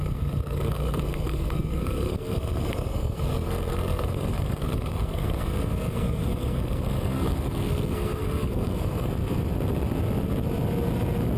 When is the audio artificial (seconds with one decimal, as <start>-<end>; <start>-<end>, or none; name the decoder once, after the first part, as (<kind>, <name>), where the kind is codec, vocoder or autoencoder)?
0.0-9.1 (codec, SNAC)